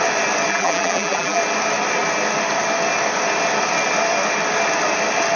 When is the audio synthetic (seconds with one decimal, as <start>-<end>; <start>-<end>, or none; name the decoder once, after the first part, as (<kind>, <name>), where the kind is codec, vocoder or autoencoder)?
0.5-1.4 (vocoder, BigVGAN v2)